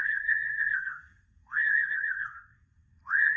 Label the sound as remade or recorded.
remade